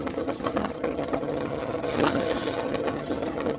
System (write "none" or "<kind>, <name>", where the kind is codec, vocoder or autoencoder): vocoder, HiFi-GAN